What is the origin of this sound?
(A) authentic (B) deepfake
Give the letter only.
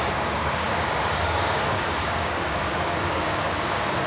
B